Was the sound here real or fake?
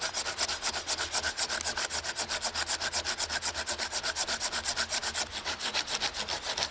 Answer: real